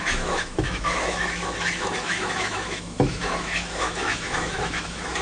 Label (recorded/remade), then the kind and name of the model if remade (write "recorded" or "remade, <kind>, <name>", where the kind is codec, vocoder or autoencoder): remade, autoencoder, DAC-VAE